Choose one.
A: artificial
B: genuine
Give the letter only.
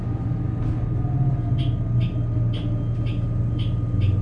B